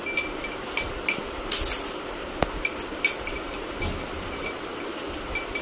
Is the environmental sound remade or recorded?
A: recorded